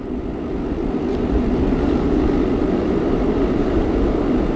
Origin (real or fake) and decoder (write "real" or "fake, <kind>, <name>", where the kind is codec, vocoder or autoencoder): real